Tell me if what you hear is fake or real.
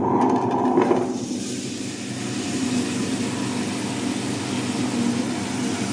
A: real